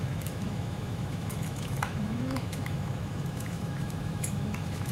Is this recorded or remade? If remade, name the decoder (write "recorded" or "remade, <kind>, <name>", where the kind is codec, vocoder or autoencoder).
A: remade, autoencoder, DAC-VAE